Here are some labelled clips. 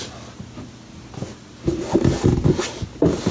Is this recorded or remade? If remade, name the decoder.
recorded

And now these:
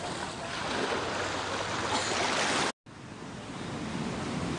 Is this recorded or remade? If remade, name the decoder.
recorded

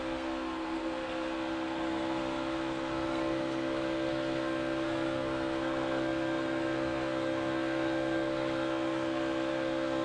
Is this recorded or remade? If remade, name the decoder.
remade, codec, SNAC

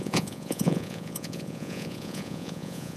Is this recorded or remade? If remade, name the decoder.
remade, vocoder, Vocos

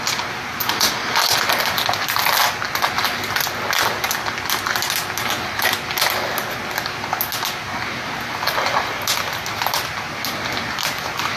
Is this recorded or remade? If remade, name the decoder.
recorded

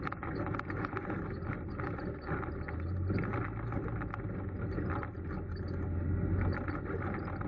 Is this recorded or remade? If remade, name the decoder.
recorded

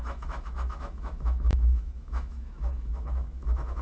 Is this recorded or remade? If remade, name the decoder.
remade, autoencoder, DAC-VAE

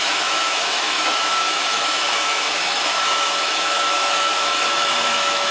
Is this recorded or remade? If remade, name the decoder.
remade, autoencoder, DAC-VAE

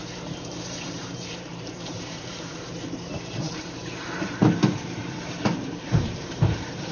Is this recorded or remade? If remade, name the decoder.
remade, vocoder, BigVGAN v2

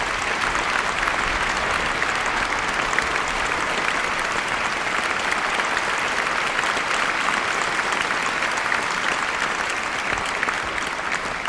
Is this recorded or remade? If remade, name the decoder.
recorded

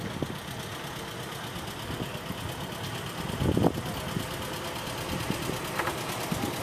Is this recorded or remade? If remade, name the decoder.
recorded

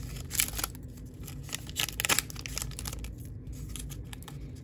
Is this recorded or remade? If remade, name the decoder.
recorded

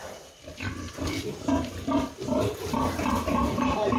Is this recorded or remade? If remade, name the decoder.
remade, vocoder, BigVGAN v2